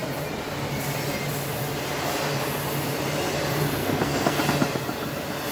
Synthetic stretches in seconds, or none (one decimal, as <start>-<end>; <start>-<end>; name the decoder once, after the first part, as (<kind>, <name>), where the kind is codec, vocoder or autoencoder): 3.8-4.4 (codec, SNAC)